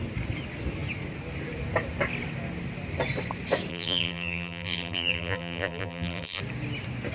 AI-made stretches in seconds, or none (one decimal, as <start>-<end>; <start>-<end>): 3.7-6.4